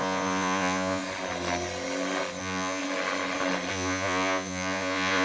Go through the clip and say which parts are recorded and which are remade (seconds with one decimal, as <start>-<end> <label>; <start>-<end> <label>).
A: 0.0-1.0 remade; 1.0-2.4 recorded; 2.4-2.8 remade; 2.8-3.7 recorded; 3.7-5.2 remade